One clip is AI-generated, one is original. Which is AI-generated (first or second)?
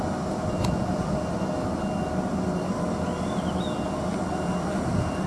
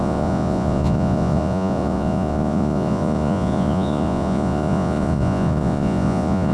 second